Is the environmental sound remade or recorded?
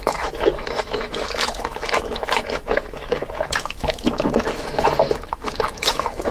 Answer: remade